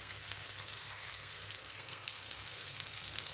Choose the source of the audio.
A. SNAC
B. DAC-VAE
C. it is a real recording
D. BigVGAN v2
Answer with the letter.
A